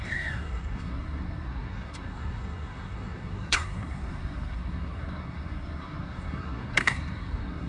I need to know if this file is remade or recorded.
remade